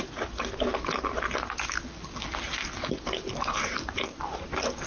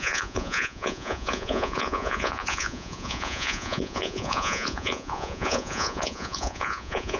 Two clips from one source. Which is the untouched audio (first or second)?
first